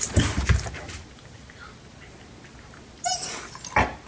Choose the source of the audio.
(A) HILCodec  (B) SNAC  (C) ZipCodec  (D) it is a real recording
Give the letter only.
D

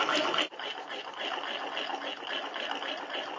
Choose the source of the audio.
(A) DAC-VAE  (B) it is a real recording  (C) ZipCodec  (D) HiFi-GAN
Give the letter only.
B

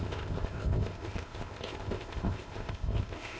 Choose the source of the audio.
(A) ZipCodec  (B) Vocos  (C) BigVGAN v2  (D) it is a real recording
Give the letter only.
A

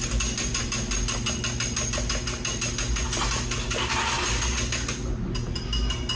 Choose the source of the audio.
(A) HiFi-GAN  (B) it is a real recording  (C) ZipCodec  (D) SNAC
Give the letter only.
B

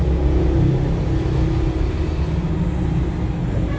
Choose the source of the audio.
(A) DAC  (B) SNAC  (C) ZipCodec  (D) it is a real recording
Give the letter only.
D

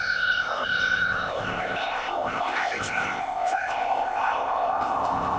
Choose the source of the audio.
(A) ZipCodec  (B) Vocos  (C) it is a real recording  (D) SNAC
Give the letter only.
A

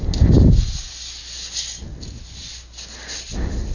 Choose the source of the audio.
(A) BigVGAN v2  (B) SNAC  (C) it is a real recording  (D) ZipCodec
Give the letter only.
C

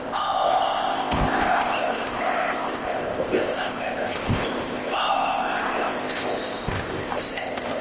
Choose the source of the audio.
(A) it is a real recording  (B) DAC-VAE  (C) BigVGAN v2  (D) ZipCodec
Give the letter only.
D